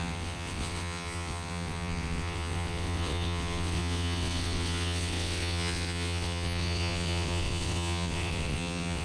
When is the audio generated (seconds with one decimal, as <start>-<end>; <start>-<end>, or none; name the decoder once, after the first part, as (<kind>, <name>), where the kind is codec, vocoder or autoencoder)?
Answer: 0.0-9.0 (vocoder, WaveNeXt)